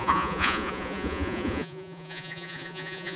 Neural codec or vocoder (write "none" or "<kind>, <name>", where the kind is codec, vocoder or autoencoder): vocoder, Vocos